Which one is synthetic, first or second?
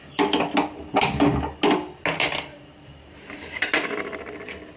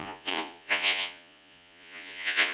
second